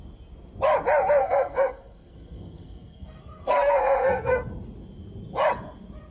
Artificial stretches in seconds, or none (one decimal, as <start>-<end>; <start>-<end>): 1.2-4.5